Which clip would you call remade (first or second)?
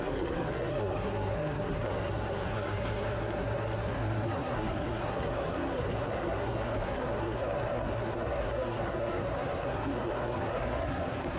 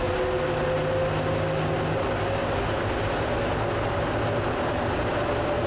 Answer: first